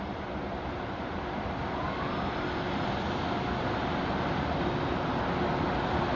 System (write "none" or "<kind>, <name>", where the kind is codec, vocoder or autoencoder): none